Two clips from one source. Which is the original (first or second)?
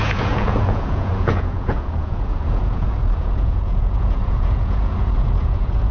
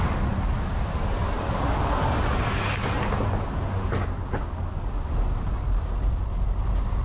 second